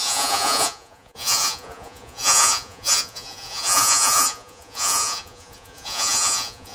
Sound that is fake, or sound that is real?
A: fake